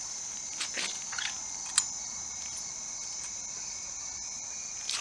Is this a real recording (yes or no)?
yes